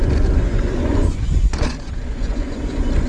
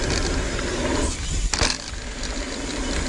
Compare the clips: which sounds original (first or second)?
second